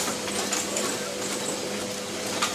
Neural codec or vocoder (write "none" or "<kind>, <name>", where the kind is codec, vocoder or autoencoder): none